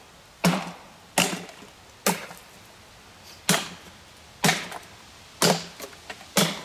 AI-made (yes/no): no